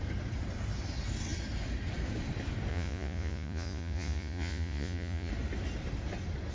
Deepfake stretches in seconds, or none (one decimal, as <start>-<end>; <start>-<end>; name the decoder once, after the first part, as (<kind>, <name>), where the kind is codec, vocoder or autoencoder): 2.7-5.3 (vocoder, Vocos)